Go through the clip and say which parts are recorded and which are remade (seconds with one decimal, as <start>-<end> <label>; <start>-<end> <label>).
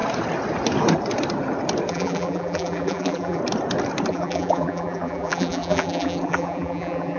0.0-1.9 recorded; 1.9-3.4 remade; 3.4-4.1 recorded; 4.1-7.2 remade